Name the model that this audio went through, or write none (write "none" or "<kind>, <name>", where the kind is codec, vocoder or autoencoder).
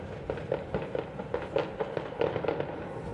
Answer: none